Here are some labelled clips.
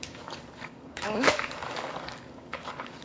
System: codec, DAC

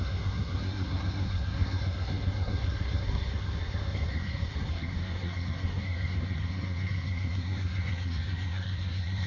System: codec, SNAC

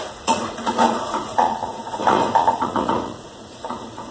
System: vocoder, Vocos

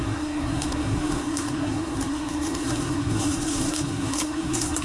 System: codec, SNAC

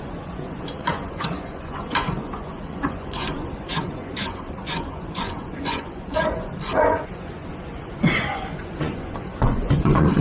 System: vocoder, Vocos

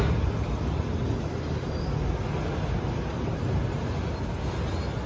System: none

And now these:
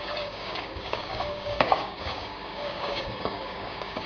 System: codec, DAC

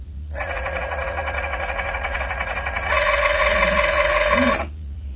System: vocoder, Vocos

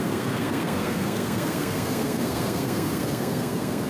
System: codec, SNAC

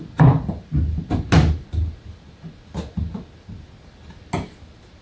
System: none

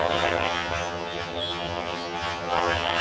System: vocoder, HiFi-GAN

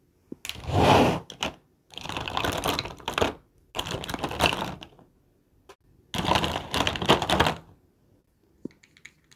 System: none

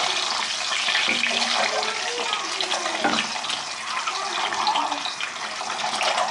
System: none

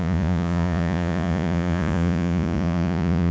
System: vocoder, Vocos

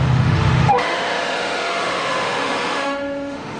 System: autoencoder, DAC-VAE